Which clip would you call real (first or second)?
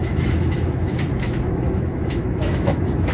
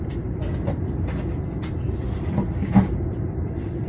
second